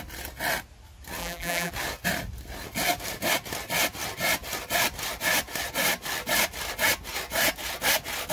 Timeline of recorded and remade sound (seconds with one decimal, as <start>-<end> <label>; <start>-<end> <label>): 0.0-1.2 recorded; 1.2-1.7 remade; 1.7-8.3 recorded